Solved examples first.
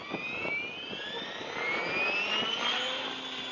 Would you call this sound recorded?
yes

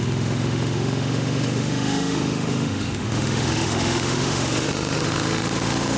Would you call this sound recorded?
no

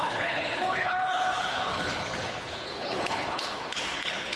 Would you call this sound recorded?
no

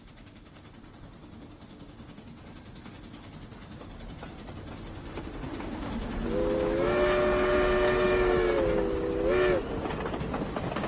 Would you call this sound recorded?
yes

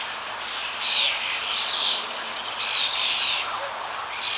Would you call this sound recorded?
yes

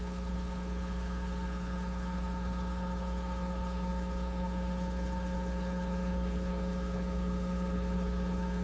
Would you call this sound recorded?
no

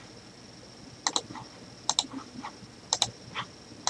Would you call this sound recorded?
yes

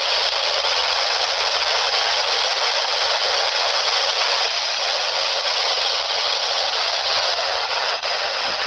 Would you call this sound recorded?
no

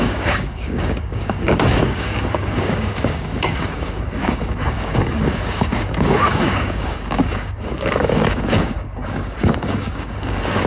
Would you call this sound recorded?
no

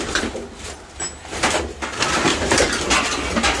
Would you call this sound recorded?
yes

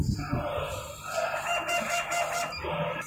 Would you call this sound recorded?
yes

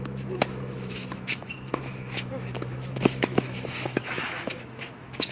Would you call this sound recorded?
no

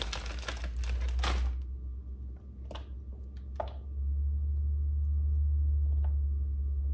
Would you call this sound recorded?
yes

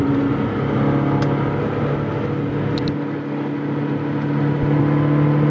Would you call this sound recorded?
yes